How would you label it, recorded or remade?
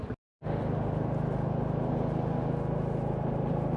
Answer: recorded